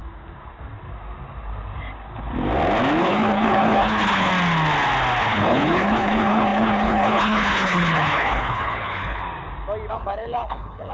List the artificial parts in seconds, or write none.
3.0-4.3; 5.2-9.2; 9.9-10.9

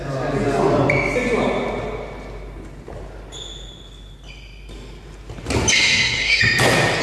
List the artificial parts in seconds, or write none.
5.7-6.4

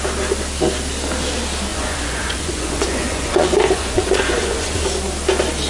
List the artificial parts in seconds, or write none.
1.7-4.7

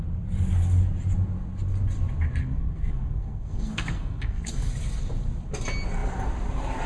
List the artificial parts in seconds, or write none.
2.4-4.7

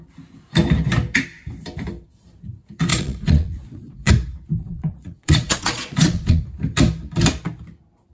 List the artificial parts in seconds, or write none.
2.9-4.1; 4.6-6.4

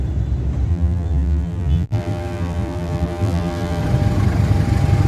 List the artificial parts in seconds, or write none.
0.7-3.8

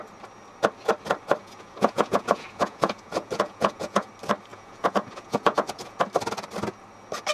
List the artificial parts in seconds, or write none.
1.4-4.1; 4.5-6.0

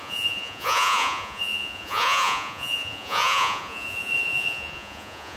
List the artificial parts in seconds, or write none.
0.0-5.4